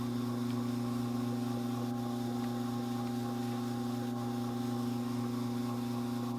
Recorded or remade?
recorded